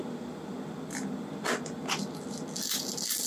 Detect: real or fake real